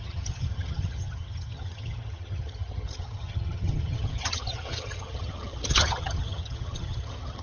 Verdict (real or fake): fake